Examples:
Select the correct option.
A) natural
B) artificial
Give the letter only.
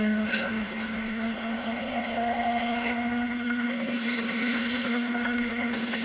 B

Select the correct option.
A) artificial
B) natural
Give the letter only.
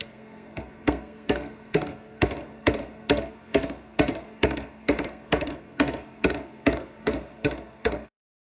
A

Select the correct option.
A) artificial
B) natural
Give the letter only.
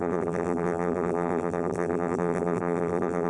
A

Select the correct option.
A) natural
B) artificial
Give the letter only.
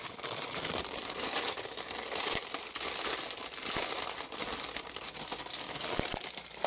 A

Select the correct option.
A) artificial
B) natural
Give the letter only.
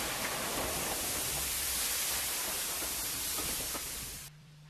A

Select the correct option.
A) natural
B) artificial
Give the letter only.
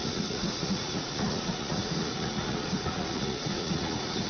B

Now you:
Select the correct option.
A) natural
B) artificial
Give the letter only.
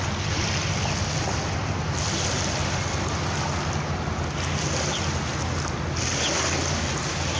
A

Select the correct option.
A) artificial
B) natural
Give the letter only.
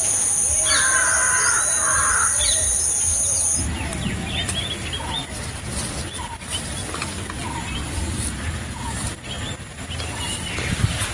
B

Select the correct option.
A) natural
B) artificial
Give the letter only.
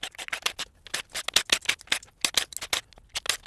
A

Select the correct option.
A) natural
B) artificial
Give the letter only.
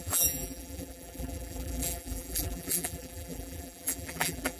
B